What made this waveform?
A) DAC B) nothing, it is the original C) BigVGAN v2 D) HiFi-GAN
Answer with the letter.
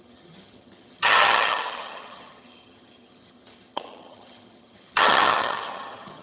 D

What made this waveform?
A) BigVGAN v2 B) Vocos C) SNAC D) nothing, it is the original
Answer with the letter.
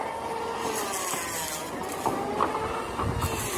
D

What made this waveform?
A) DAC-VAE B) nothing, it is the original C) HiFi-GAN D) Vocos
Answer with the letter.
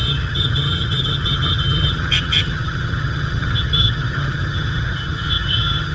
C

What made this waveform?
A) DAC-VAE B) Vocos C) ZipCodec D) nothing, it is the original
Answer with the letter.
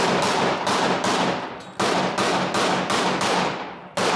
D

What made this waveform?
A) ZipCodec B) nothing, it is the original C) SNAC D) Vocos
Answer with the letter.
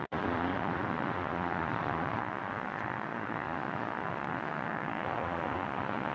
D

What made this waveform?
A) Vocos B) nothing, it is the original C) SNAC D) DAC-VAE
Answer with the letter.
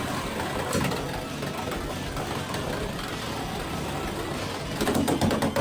B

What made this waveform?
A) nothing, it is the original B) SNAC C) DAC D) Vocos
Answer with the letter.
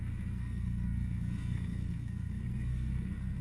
B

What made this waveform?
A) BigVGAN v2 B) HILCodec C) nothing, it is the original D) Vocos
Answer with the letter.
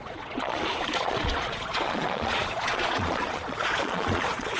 D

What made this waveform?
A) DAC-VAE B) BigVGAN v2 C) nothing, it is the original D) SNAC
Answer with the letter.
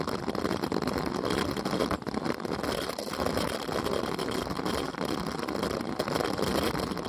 C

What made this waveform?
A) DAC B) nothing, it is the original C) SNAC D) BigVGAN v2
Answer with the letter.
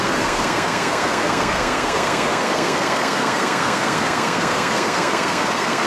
C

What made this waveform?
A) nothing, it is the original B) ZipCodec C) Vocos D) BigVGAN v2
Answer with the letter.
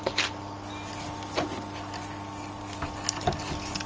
A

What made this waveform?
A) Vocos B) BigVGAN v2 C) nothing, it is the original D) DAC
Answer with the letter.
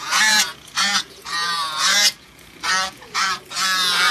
A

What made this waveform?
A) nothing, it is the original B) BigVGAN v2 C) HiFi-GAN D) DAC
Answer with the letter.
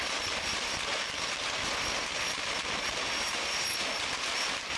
B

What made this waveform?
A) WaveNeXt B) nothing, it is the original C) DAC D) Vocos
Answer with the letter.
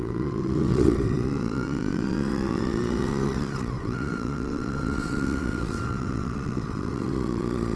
A